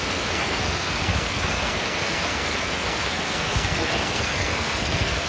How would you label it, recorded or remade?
remade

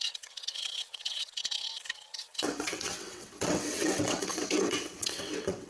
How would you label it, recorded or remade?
remade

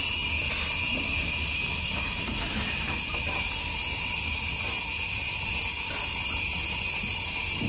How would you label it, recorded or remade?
recorded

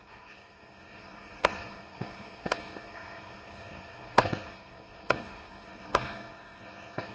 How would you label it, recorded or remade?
remade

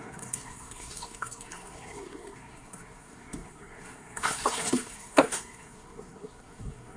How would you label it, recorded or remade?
remade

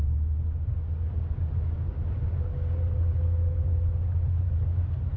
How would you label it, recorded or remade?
recorded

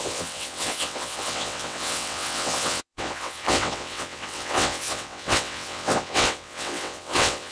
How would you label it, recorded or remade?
remade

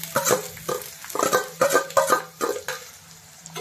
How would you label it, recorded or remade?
recorded